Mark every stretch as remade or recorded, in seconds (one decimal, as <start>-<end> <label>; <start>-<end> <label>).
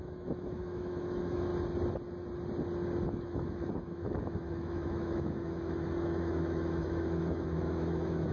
0.0-1.5 remade; 1.5-3.1 recorded; 3.1-8.3 remade